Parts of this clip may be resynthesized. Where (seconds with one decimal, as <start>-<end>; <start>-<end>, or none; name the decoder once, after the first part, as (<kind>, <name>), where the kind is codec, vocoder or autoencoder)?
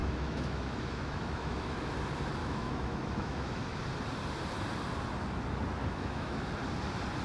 0.0-1.9 (autoencoder, DAC-VAE); 2.4-3.8; 5.8-6.5